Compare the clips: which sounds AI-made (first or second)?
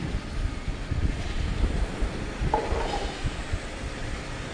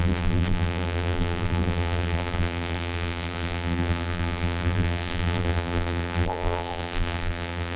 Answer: second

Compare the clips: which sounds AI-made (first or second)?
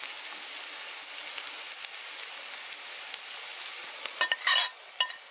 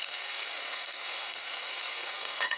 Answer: second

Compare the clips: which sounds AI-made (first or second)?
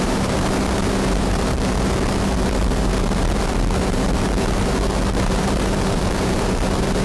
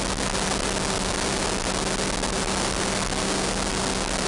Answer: first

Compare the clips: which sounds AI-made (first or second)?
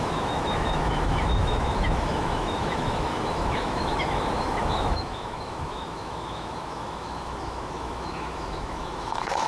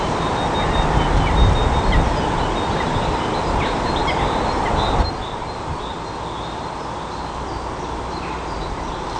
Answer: first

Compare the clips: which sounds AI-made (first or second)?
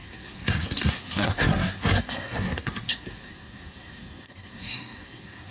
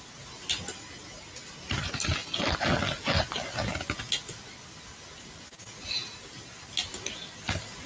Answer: first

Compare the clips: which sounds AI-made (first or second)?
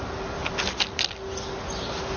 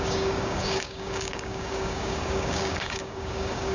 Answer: second